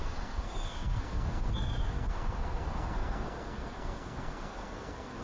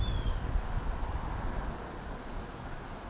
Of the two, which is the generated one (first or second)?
first